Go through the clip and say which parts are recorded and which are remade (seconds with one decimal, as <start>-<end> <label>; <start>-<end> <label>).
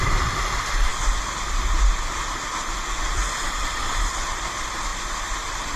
0.0-5.8 recorded